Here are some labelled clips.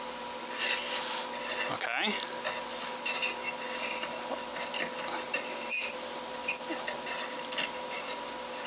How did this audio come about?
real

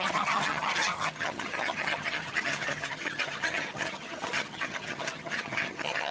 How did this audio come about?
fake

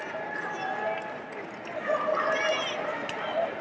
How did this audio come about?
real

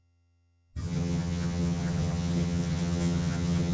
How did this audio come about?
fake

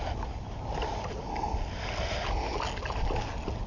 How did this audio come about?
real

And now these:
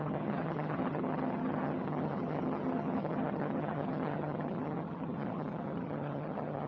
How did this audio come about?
fake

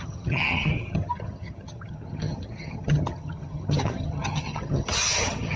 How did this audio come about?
fake